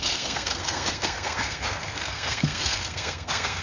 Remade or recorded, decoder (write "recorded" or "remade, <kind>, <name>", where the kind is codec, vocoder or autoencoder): remade, codec, SNAC